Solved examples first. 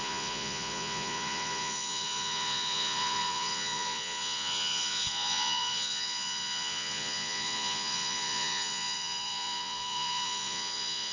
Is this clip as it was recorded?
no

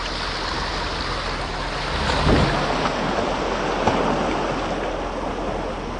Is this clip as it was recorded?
yes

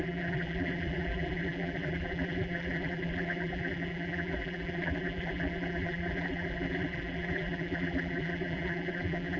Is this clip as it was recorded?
no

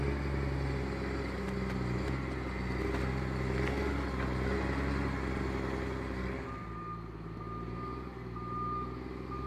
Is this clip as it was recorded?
yes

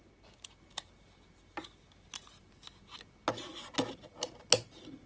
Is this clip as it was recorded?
yes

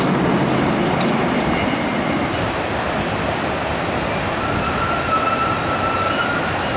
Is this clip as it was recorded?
yes